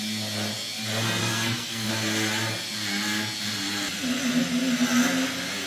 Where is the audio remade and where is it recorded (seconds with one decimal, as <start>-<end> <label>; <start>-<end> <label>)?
0.0-1.2 recorded; 1.2-1.9 remade; 1.9-5.7 recorded